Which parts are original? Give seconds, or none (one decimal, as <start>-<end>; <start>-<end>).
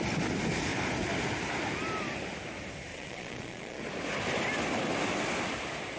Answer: 0.0-2.9; 3.8-6.0